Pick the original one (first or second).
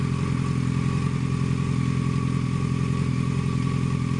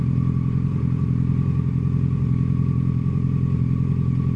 first